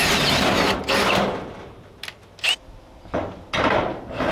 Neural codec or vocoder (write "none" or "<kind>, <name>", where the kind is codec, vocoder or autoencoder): none